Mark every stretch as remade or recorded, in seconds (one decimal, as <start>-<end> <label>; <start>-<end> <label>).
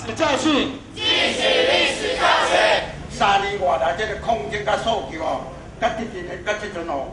0.0-7.1 recorded